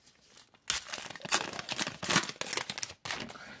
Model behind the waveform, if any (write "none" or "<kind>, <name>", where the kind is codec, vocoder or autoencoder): none